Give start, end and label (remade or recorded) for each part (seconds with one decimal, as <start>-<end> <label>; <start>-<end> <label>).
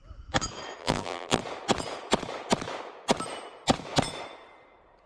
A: 0.0-0.8 recorded; 0.8-1.4 remade; 1.4-5.1 recorded